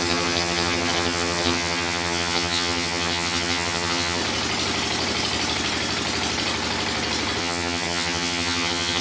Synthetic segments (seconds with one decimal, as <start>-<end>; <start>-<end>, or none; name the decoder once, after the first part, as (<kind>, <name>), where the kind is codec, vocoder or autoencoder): 0.0-4.2 (vocoder, HiFi-GAN); 7.4-9.0